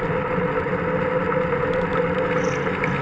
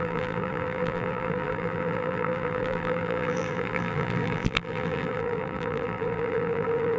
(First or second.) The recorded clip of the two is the first